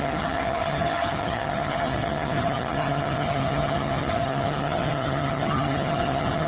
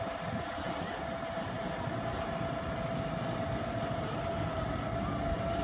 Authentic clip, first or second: second